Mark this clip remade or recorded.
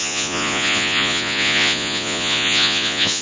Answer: remade